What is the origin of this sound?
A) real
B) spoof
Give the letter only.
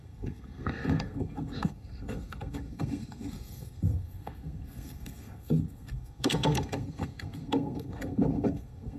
B